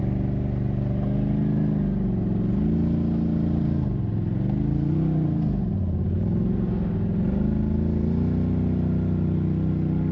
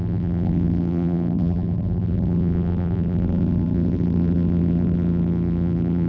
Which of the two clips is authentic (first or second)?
first